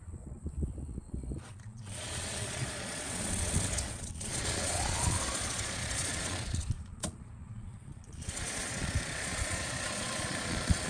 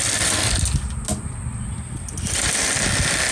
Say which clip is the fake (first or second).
first